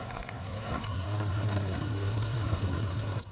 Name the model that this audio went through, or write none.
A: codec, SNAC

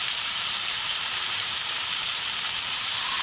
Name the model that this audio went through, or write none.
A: vocoder, BigVGAN v2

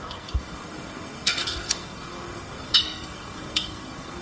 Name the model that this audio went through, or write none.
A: codec, SNAC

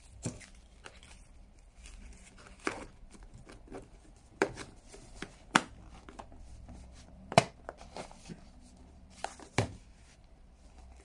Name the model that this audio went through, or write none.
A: vocoder, BigVGAN v2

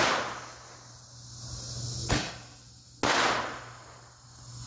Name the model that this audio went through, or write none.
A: none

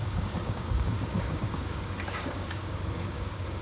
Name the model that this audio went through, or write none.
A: codec, DAC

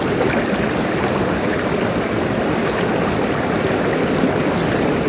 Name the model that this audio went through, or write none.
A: none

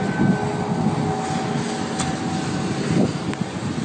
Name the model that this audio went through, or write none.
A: none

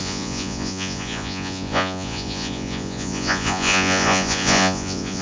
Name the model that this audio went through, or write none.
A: vocoder, Vocos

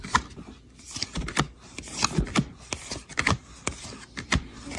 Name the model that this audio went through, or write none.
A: none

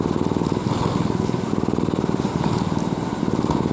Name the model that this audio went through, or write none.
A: none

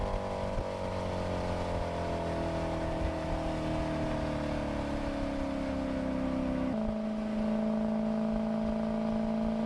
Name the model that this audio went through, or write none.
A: none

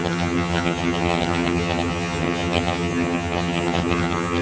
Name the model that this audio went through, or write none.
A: vocoder, HiFi-GAN